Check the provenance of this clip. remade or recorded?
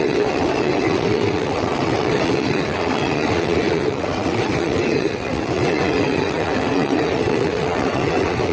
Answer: remade